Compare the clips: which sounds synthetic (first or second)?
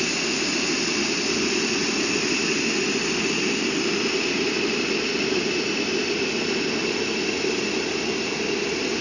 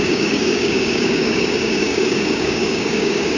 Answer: second